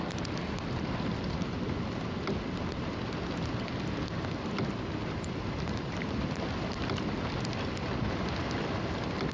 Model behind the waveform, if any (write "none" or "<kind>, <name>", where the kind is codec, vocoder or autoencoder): none